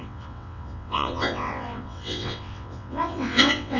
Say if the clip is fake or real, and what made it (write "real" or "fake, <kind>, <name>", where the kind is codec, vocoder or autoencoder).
fake, vocoder, WaveNeXt